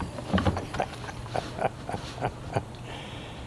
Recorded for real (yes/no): no